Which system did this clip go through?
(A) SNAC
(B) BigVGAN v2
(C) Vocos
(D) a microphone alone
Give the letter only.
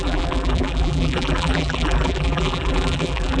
B